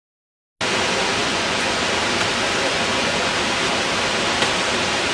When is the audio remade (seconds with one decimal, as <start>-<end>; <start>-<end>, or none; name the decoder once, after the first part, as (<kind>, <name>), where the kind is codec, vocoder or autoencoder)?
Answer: 1.2-1.8 (vocoder, Vocos); 2.7-3.3